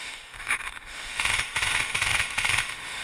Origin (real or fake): fake